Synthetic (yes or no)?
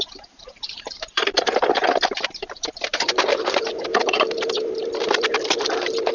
yes